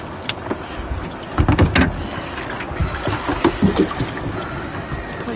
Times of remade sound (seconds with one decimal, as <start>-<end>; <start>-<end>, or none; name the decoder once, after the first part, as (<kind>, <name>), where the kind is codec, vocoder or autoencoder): none